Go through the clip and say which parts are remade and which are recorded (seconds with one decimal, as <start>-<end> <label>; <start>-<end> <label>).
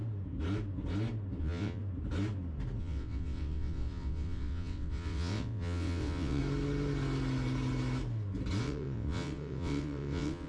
0.0-1.4 recorded; 1.4-1.8 remade; 1.8-2.8 recorded; 2.8-6.4 remade; 6.4-8.6 recorded; 8.6-10.5 remade